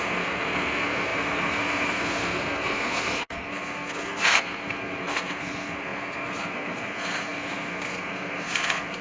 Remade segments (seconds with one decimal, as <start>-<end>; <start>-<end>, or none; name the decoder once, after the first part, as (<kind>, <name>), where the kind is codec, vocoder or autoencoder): 0.0-9.0 (codec, SNAC)